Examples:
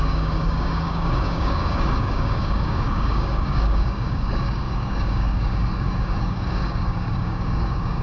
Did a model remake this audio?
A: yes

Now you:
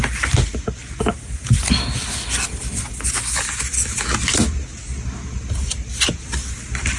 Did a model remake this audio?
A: no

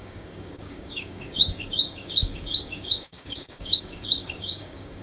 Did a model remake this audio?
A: yes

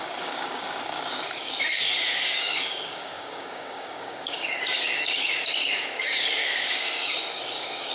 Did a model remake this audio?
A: yes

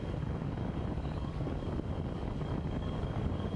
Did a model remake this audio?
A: yes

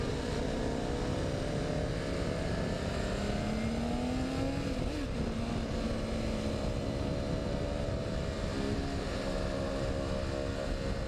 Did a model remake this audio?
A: no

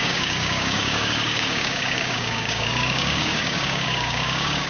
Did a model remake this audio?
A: yes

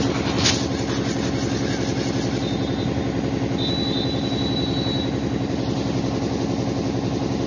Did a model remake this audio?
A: no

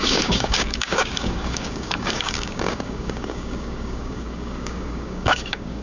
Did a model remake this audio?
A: yes